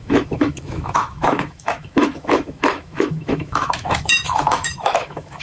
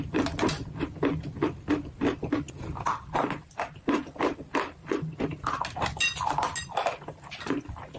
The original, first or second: second